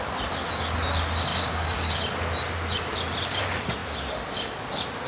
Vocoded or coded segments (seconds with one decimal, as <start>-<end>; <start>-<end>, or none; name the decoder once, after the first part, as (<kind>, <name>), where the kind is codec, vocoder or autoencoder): 1.3-2.0 (codec, DAC)